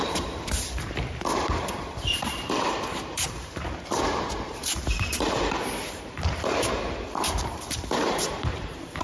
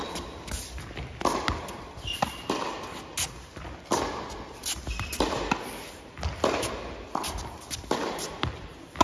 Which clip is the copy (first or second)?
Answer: first